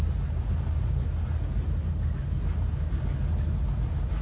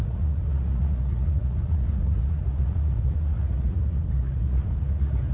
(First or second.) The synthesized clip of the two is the second